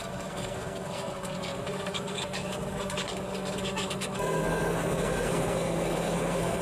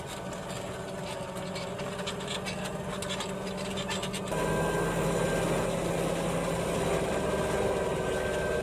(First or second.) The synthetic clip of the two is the first